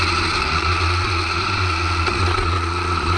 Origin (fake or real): fake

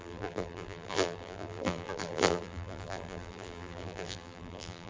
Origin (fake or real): fake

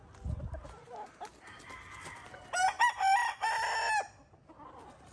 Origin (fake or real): real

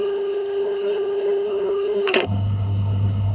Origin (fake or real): fake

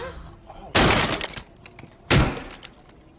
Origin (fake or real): real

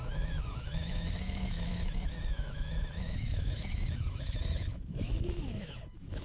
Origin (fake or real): fake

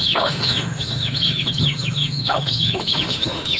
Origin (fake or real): fake